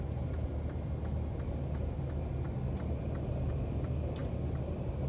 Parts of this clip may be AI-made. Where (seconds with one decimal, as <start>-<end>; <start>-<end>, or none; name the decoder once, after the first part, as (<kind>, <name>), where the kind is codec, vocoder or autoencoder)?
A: none